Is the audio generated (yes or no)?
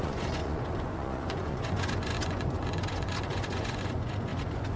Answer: yes